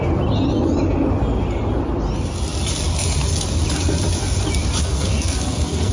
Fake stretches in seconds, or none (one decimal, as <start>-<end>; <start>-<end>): 4.8-5.9